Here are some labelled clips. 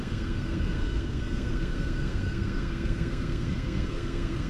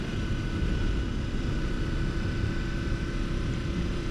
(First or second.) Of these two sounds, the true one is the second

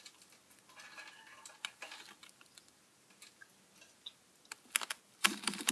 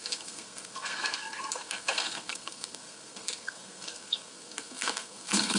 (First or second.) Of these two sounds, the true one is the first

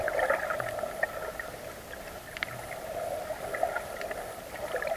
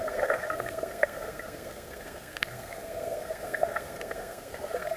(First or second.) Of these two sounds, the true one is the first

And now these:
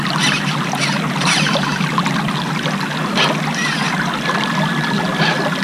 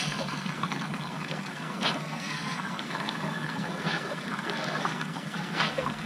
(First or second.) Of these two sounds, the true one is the first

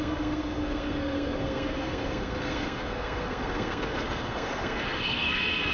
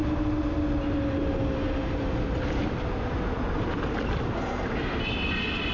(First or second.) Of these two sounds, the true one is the second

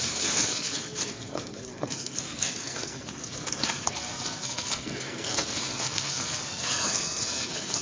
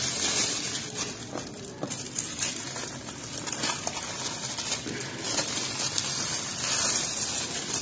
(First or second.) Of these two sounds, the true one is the second